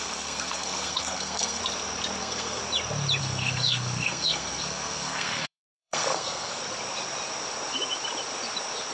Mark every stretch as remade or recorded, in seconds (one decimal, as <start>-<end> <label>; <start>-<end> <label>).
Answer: 0.0-1.6 remade; 1.6-2.2 recorded; 2.2-2.6 remade; 2.6-3.2 recorded; 3.2-6.6 remade; 6.6-8.9 recorded